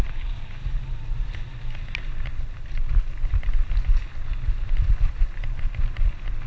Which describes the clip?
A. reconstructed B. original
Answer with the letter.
B